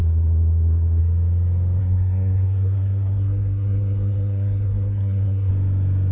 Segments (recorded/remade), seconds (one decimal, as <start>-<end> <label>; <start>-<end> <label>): 0.0-1.0 remade; 1.0-1.8 recorded; 1.8-5.5 remade; 5.5-6.1 recorded